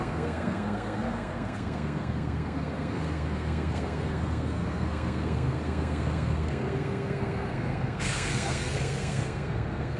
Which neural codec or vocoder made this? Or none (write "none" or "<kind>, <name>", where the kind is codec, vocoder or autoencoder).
codec, SNAC